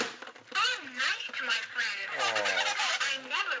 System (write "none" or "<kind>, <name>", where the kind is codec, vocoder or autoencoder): none